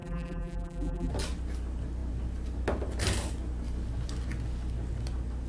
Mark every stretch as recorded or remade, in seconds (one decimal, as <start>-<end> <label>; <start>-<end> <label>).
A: 0.0-1.1 remade; 1.1-5.5 recorded